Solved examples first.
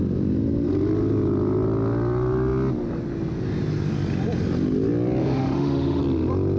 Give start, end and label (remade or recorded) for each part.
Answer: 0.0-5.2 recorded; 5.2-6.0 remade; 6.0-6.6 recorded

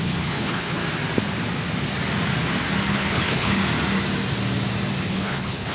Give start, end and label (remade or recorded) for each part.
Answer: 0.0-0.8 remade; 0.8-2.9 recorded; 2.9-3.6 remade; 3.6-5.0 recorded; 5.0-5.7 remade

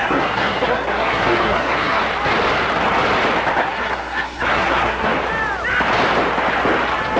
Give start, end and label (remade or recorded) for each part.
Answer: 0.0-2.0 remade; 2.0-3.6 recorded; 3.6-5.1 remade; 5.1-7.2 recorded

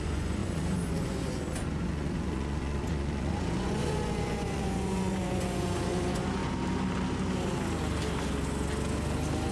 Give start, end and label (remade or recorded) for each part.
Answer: 0.0-6.4 remade; 6.4-9.5 recorded